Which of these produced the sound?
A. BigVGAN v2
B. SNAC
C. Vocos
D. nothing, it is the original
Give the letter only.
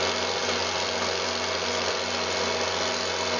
D